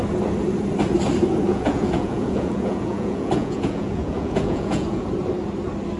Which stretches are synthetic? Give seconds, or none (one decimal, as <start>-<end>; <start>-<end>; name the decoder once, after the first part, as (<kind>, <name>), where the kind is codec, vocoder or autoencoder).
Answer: 1.5-5.1 (vocoder, Vocos)

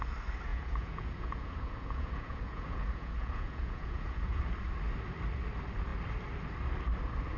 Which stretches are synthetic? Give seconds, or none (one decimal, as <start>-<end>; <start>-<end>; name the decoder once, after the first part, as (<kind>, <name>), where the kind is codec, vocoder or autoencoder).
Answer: 0.5-4.4 (vocoder, Vocos)

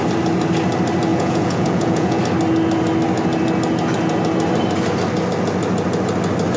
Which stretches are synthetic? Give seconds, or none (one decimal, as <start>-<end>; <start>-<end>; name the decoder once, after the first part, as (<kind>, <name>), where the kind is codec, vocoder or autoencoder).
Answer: 1.1-2.2 (vocoder, Vocos)

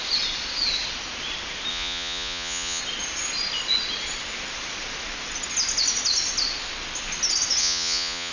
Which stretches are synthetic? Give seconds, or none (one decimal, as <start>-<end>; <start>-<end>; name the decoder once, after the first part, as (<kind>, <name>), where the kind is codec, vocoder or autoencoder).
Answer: 1.7-2.8 (vocoder, Vocos); 7.6-8.3

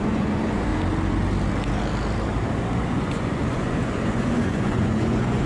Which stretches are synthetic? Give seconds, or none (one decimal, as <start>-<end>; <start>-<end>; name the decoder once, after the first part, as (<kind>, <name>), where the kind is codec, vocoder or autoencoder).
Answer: 0.0-0.7 (vocoder, Vocos); 2.9-5.5

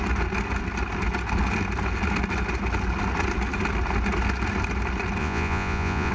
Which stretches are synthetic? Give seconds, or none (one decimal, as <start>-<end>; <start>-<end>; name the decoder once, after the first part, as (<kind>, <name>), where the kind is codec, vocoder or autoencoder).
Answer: 5.2-6.1 (vocoder, Vocos)

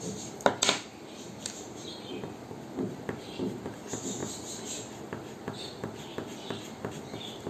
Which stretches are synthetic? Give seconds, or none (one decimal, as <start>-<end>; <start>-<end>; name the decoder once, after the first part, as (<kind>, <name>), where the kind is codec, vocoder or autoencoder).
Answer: none